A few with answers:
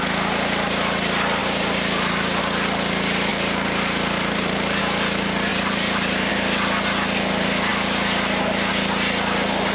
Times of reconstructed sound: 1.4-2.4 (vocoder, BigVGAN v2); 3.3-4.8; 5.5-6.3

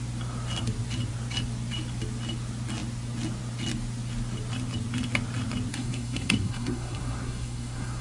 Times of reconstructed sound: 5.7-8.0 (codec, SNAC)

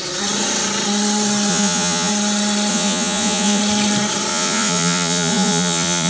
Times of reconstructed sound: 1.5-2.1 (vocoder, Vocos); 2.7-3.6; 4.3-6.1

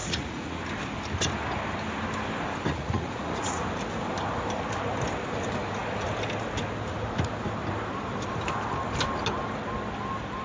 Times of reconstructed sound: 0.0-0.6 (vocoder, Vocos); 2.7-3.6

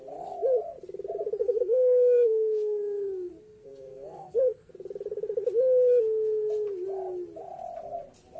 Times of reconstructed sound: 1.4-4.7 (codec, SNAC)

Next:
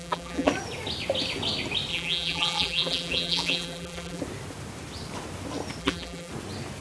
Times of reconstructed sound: 0.0-0.5 (vocoder, BigVGAN v2); 1.9-4.2; 5.8-6.3